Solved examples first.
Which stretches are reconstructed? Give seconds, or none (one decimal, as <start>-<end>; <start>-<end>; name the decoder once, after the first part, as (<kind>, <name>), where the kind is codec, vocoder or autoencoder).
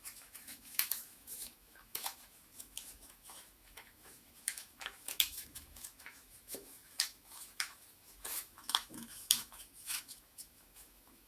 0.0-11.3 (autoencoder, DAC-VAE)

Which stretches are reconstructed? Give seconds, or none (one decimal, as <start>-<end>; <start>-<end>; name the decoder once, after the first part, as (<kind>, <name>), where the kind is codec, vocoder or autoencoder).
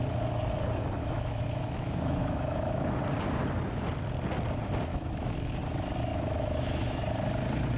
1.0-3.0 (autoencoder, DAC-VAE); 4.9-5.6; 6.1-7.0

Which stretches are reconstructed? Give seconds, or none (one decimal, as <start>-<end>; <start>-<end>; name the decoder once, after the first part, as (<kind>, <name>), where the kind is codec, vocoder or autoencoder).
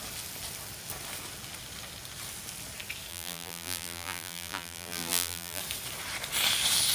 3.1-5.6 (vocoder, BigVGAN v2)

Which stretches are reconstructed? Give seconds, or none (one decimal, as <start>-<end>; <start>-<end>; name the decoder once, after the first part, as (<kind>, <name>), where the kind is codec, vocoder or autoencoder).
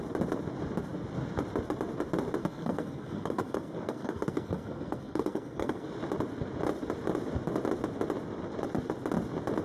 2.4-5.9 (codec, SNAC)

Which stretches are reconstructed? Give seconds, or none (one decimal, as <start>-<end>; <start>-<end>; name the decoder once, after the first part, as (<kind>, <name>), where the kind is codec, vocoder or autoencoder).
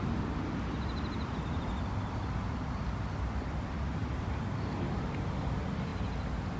none